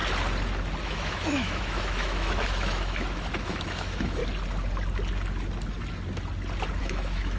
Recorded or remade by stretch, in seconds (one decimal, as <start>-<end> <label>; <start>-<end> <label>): 0.0-0.8 recorded; 0.8-4.2 remade; 4.2-6.8 recorded; 6.8-7.4 remade